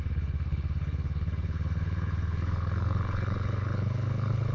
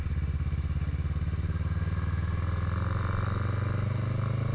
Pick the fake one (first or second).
first